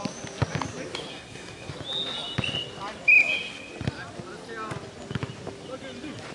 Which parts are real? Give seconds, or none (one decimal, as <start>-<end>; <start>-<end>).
0.0-1.1; 1.7-6.3